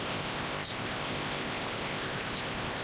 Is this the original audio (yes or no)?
no